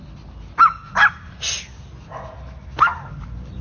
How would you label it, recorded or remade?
recorded